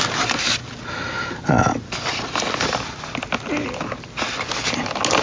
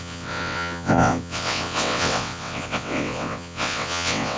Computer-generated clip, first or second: second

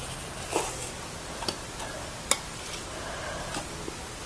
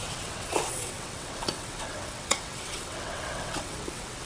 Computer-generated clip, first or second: second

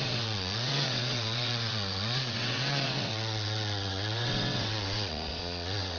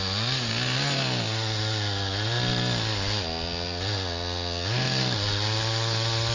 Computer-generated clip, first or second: first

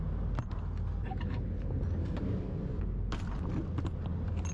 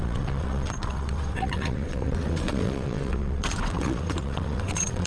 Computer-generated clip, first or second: second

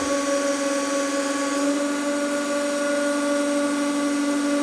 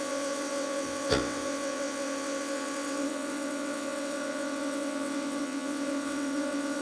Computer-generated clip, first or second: second